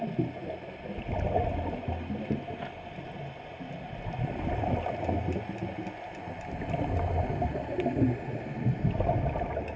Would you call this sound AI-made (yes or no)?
no